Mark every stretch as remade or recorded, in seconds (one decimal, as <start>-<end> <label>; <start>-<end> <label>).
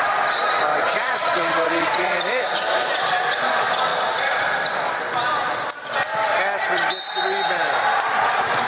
0.0-0.9 recorded; 0.9-2.6 remade; 2.6-8.7 recorded